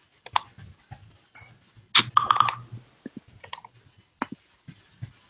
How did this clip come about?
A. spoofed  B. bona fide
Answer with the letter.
B